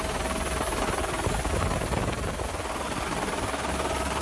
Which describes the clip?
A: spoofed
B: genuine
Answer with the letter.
B